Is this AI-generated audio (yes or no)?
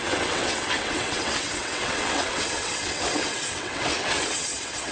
yes